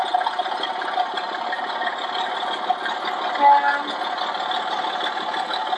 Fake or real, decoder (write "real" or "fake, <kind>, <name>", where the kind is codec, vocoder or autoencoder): real